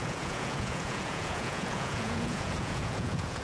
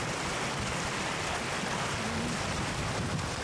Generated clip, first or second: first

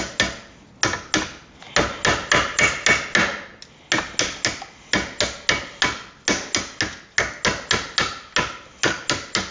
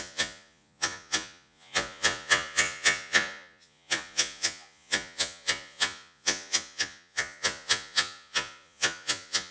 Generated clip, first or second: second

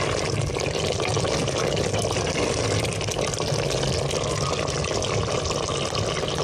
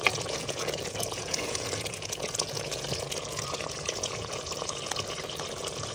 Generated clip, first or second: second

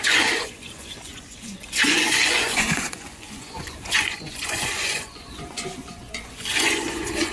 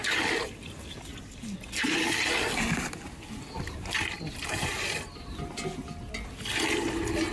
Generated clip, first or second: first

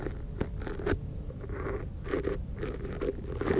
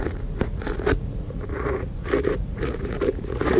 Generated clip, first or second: second